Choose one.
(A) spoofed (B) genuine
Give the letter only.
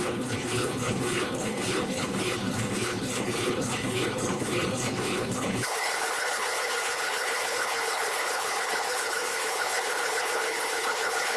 A